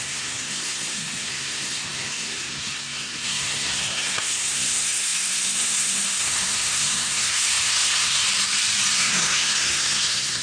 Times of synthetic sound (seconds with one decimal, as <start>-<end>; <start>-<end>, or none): 0.0-8.2; 8.9-10.4